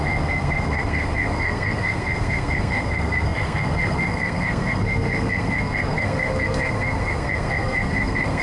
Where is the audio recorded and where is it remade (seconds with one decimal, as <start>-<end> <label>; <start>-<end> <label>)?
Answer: 0.0-8.4 remade